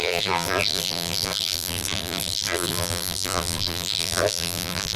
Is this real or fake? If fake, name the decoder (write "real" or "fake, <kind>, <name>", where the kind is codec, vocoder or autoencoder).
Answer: fake, vocoder, BigVGAN v2